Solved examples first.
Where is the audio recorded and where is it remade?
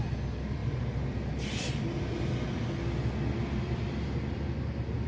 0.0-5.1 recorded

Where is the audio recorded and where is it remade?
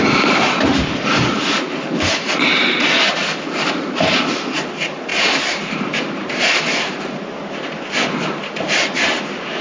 0.0-5.1 recorded; 5.1-7.5 remade; 7.5-9.6 recorded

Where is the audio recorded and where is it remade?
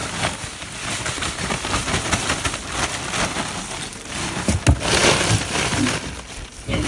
0.0-5.0 recorded; 5.0-6.9 remade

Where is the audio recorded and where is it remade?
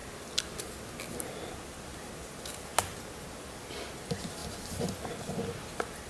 0.0-1.0 recorded; 1.0-2.7 remade; 2.7-3.4 recorded; 3.4-6.1 remade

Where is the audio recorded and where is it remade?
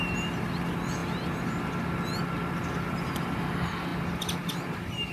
0.0-3.9 recorded; 3.9-5.1 remade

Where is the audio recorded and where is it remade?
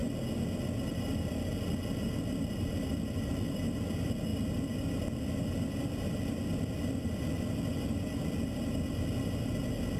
0.0-10.0 recorded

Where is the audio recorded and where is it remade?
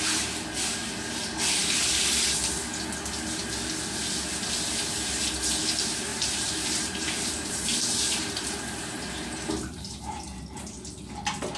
0.0-6.1 recorded; 6.1-10.6 remade; 10.6-11.6 recorded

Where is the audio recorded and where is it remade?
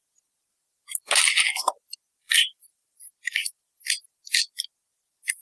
0.0-2.2 recorded; 2.2-2.9 remade; 2.9-5.4 recorded